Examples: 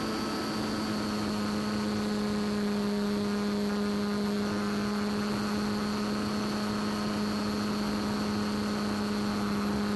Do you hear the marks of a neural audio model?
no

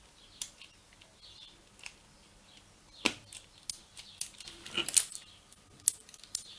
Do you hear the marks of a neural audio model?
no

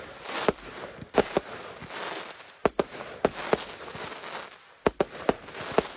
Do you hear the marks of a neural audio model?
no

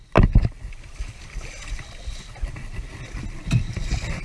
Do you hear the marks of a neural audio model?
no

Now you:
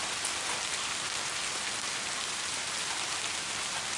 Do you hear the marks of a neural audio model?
no